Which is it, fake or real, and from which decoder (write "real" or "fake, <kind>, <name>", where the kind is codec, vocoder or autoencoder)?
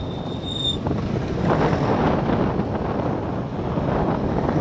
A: real